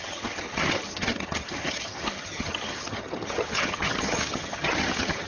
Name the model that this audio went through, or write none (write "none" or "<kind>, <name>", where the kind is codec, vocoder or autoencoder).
vocoder, HiFi-GAN